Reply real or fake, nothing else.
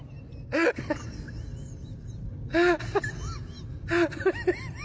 real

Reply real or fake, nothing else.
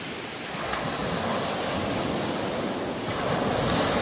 real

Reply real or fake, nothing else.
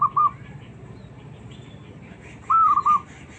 fake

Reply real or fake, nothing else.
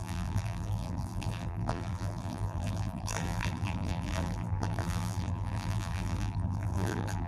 fake